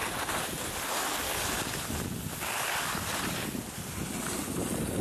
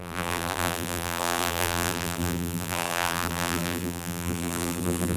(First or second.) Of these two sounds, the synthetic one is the second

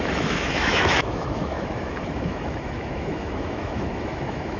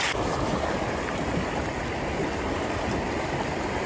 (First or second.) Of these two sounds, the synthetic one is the first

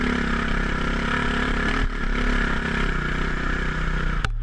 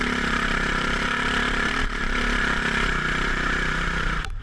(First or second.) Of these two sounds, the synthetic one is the second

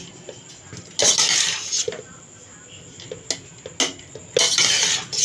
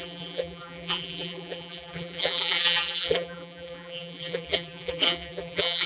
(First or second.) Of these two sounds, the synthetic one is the second